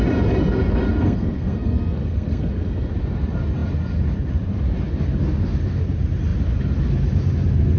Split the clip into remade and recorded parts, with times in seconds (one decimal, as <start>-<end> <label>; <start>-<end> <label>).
0.0-0.9 recorded; 0.9-2.9 remade; 2.9-7.8 recorded